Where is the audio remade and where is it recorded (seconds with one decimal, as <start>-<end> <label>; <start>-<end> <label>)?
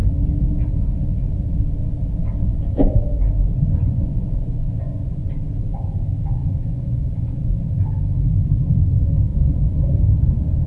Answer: 0.0-3.8 recorded; 3.8-5.3 remade; 5.3-6.4 recorded; 6.4-7.6 remade; 7.6-9.3 recorded; 9.3-9.8 remade; 9.8-10.7 recorded